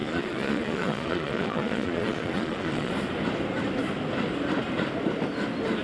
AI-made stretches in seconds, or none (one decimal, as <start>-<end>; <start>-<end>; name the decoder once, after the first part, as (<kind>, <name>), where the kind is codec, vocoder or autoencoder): 0.0-2.9 (vocoder, Vocos)